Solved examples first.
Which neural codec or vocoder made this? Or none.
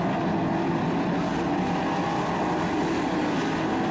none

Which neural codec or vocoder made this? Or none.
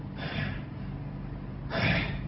none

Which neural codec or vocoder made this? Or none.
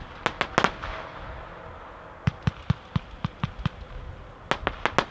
none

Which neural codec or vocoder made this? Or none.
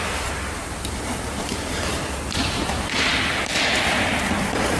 vocoder, BigVGAN v2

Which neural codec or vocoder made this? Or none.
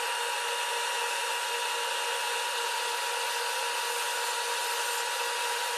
none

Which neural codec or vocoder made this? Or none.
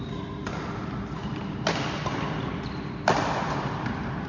vocoder, BigVGAN v2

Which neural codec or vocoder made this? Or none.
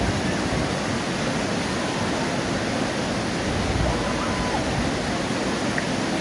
none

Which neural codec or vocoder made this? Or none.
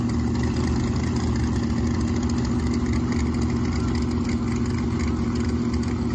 none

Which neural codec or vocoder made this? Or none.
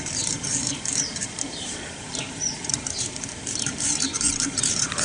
vocoder, BigVGAN v2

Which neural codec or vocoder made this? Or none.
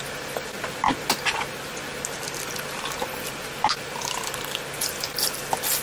none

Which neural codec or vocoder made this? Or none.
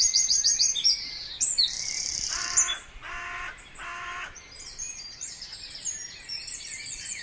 vocoder, BigVGAN v2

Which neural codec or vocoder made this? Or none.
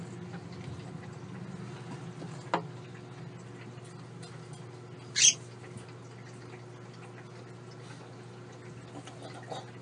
none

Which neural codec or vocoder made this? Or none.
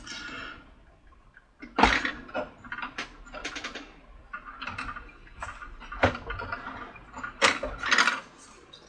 none